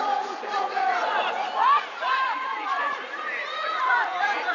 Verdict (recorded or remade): remade